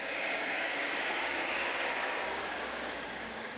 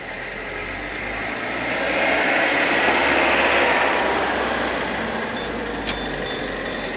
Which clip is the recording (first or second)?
second